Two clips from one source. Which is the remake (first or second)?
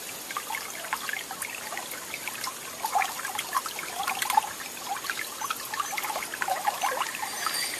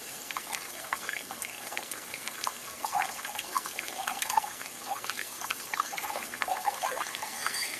second